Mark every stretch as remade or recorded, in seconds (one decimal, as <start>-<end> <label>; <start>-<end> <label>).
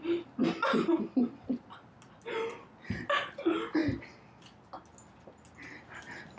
0.0-6.4 recorded